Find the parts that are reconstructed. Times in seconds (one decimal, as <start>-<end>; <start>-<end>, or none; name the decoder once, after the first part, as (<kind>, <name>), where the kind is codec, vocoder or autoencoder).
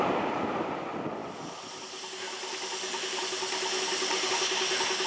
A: none